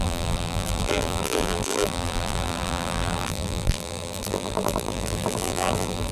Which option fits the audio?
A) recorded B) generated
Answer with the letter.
B